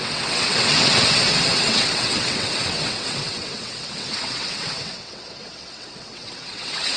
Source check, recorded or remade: remade